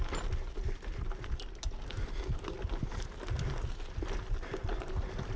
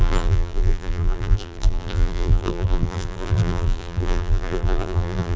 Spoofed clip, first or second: second